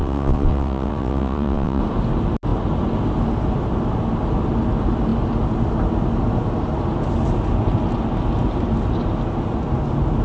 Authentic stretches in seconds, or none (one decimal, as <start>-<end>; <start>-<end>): 1.8-10.2